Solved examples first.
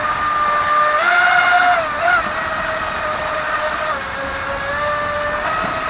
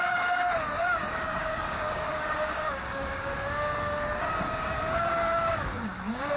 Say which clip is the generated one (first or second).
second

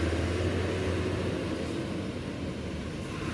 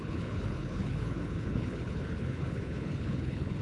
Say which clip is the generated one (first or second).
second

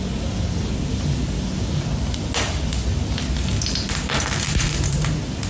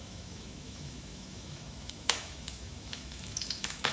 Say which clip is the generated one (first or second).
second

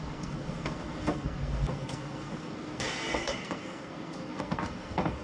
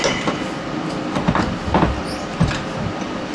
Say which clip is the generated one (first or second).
first